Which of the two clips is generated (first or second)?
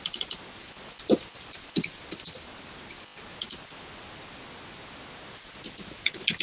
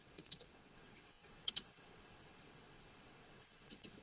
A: second